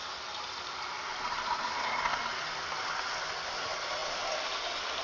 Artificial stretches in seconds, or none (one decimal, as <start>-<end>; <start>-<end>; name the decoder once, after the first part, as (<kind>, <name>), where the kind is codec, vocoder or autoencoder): none